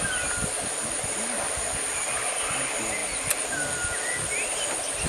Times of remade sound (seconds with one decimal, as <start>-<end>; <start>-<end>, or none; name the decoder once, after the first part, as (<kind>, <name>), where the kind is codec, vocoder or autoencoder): none